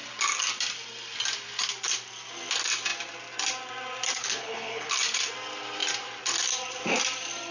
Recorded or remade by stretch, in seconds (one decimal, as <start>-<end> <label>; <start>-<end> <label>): 0.0-4.2 recorded; 4.2-4.9 remade; 4.9-7.5 recorded